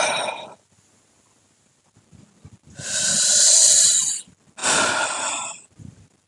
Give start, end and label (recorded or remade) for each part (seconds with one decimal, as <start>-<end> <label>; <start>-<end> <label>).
0.0-6.3 recorded